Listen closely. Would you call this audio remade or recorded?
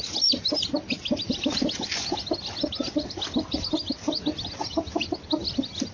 recorded